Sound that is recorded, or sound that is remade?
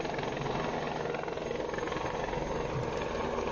recorded